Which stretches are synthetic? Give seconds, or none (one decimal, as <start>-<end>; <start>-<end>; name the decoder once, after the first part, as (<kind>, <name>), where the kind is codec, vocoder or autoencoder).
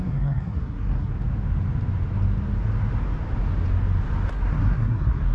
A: 0.0-1.1 (codec, SNAC); 4.3-5.3